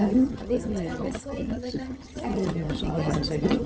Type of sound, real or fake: fake